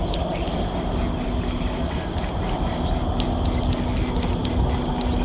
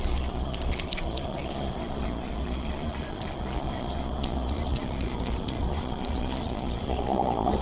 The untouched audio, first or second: first